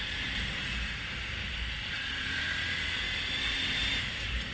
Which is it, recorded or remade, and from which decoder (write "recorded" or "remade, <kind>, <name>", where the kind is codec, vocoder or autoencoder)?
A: remade, vocoder, BigVGAN v2